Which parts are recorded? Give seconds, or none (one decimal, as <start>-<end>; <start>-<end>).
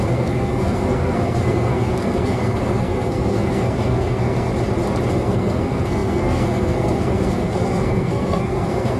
4.5-5.1